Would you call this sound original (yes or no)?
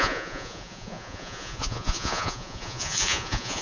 no